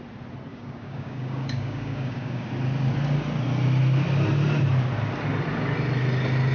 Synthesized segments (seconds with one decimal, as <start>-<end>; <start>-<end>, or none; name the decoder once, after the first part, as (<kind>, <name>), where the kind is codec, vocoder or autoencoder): 0.5-2.5 (codec, DAC)